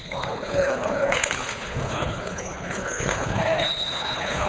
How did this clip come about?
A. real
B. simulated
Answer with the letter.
B